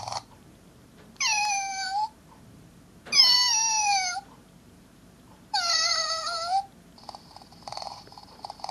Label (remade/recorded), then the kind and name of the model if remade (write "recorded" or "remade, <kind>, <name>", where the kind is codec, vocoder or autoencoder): remade, vocoder, BigVGAN v2